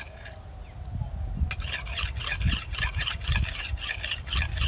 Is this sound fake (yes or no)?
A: no